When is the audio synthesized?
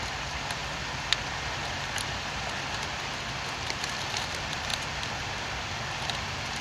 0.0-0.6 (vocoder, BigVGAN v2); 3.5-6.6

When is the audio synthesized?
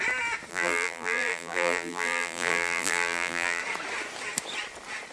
0.5-3.6 (vocoder, BigVGAN v2)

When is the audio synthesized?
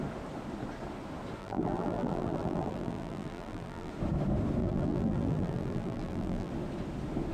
1.4-3.9 (vocoder, BigVGAN v2); 4.6-6.5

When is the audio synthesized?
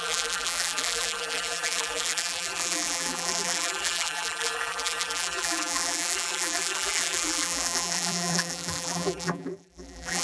0.0-10.2 (vocoder, BigVGAN v2)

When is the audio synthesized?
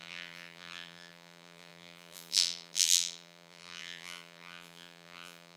0.0-5.6 (vocoder, BigVGAN v2)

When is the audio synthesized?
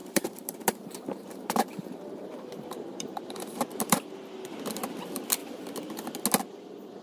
0.0-4.0 (vocoder, BigVGAN v2); 5.4-5.9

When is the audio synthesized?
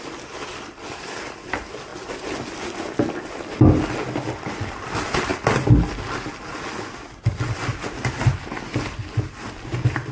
none